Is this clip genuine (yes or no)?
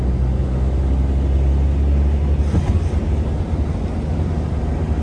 yes